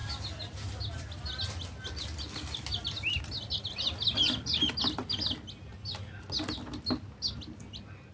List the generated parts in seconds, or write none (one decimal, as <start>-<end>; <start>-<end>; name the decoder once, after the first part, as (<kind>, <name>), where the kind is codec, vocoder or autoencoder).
none